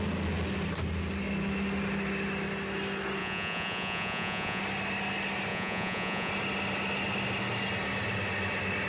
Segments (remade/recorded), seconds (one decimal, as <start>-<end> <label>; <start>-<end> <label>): 0.0-3.2 recorded; 3.2-4.6 remade; 4.6-5.5 recorded; 5.5-6.3 remade; 6.3-8.9 recorded